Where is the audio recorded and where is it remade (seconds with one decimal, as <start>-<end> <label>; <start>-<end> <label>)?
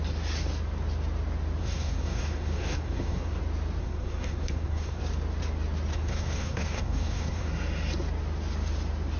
0.0-1.6 recorded; 1.6-3.4 remade; 3.4-3.8 recorded; 3.8-5.0 remade; 5.0-5.9 recorded; 5.9-7.5 remade; 7.5-9.2 recorded